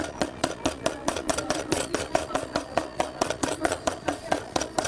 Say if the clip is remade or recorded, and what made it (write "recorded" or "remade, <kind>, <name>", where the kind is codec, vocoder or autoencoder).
remade, vocoder, Vocos